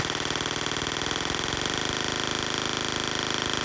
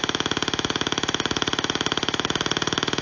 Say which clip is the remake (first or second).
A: second